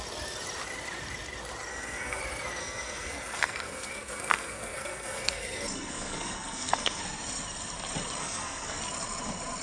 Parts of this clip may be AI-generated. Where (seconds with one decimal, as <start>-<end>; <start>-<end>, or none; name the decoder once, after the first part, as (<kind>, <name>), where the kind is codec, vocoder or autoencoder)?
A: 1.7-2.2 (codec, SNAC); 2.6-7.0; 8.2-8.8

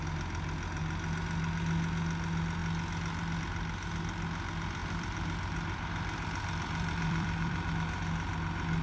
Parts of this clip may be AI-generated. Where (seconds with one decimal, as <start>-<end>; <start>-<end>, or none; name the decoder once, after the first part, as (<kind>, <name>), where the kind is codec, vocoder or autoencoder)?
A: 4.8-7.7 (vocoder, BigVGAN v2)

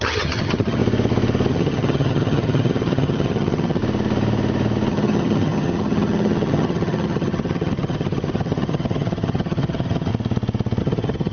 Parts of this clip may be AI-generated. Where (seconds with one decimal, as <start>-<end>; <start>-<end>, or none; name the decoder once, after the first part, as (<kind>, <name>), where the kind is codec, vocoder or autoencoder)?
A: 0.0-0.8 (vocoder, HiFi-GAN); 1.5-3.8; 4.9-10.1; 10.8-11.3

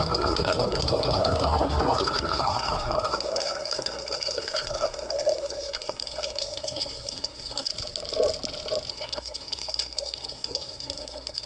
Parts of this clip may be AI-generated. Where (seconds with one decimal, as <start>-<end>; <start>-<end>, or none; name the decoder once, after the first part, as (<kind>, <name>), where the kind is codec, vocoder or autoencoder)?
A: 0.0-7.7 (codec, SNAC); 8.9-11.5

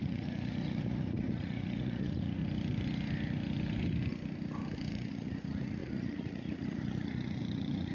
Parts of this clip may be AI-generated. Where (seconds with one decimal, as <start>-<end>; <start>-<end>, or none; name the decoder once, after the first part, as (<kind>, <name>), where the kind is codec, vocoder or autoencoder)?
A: 0.0-2.4 (vocoder, Vocos); 4.9-7.9